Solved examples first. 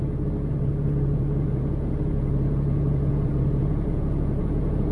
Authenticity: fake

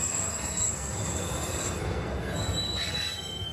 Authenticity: fake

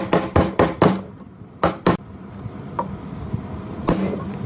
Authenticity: real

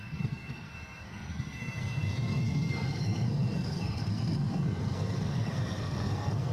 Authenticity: fake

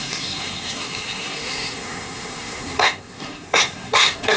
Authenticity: fake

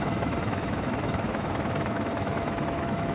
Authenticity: fake